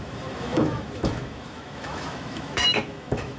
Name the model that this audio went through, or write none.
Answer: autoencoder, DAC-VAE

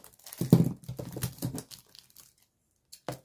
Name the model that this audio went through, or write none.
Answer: none